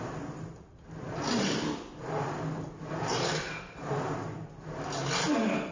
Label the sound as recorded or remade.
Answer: recorded